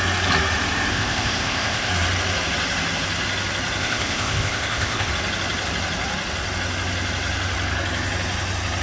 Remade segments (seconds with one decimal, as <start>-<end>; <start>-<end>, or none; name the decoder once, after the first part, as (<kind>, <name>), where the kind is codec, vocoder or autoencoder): 0.9-1.9 (codec, ZipCodec); 3.8-5.1